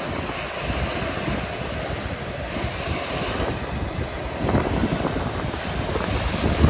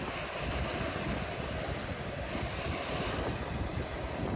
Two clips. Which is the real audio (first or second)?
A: first